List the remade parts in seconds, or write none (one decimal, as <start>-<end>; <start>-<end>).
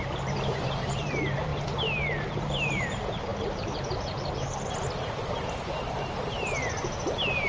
0.0-1.5; 2.4-3.3